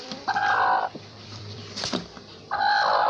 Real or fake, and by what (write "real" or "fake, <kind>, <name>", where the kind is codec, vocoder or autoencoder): fake, vocoder, BigVGAN v2